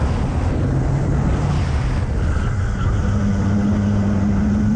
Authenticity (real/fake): real